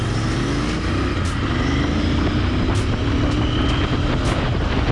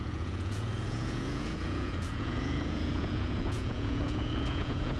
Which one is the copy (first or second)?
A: second